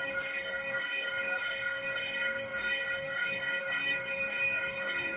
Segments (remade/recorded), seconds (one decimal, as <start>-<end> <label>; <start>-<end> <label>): 0.0-5.2 remade